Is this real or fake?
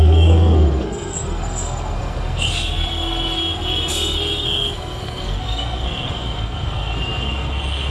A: fake